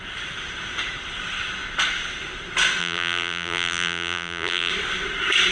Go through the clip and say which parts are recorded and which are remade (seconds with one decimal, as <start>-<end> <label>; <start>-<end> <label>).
0.0-2.8 recorded; 2.8-4.7 remade; 4.7-5.5 recorded